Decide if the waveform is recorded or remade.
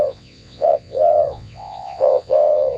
remade